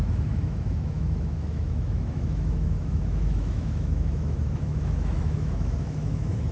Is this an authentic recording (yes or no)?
no